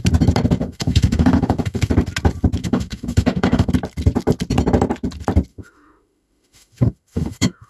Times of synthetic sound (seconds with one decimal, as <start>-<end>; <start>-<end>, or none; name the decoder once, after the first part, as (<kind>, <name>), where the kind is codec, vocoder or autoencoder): 0.6-1.9 (autoencoder, DAC-VAE); 2.6-3.7; 5.5-7.7